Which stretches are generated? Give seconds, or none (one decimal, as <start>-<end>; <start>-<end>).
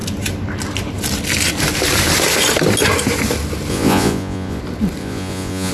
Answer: 3.7-4.6; 5.0-5.7